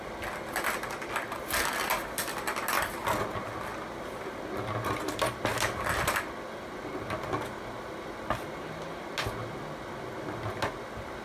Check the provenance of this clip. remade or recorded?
recorded